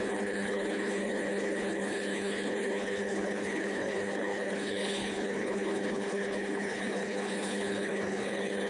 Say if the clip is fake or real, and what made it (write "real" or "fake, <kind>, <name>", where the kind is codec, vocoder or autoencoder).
fake, codec, HILCodec